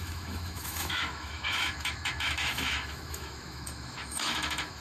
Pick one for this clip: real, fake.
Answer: fake